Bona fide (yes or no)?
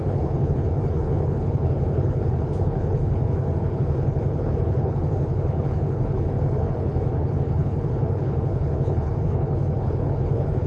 no